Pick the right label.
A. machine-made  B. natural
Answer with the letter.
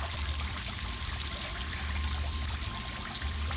A